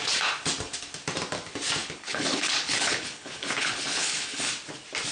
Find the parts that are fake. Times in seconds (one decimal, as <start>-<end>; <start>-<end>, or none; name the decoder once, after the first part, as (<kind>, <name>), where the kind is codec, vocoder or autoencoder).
1.8-4.5 (codec, HILCodec)